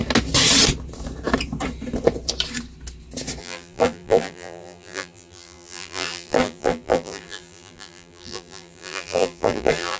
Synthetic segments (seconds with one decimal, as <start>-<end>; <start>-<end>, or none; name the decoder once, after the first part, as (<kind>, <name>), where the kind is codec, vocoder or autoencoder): 3.4-10.0 (vocoder, BigVGAN v2)